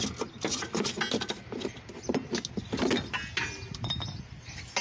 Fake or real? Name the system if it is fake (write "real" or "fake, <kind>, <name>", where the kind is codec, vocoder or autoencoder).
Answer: real